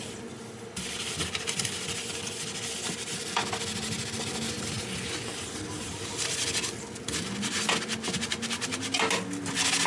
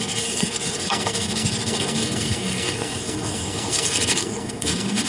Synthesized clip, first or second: second